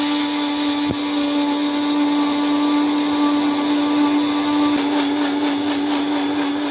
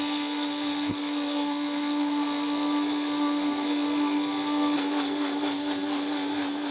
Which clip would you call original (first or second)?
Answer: first